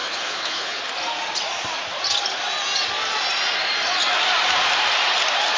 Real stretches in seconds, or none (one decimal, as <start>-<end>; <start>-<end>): 0.8-5.6